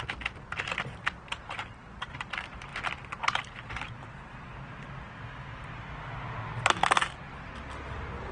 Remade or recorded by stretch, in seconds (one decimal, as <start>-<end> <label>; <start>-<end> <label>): 0.0-8.3 recorded